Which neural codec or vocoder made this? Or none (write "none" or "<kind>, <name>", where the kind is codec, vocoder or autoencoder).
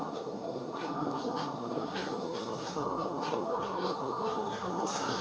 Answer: codec, SNAC